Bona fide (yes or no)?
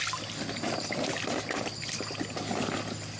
yes